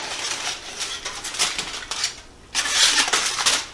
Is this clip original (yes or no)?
yes